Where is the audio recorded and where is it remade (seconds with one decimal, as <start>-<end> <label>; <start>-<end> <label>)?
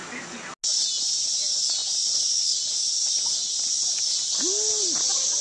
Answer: 0.0-5.4 recorded